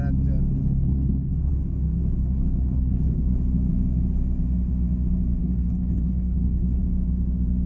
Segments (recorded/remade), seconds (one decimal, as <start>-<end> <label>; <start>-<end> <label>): 0.0-0.6 recorded; 0.6-1.5 remade; 1.5-2.2 recorded; 2.2-3.3 remade; 3.3-5.4 recorded; 5.4-6.8 remade; 6.8-7.7 recorded